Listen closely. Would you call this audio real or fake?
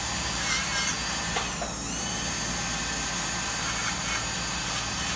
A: real